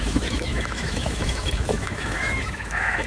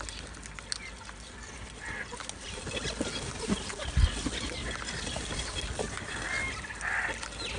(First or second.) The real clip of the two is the second